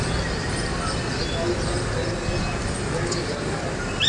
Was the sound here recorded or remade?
recorded